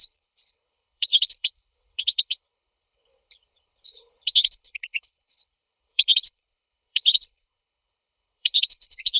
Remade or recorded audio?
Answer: remade